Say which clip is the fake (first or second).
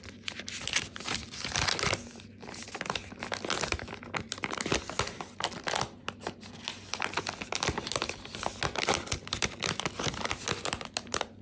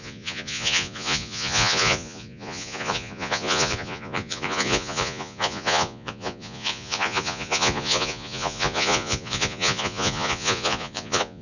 second